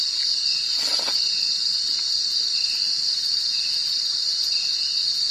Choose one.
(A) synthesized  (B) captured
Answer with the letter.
B